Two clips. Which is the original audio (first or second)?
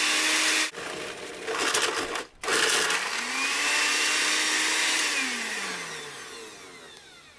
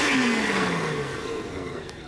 first